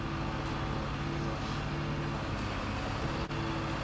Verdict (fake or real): real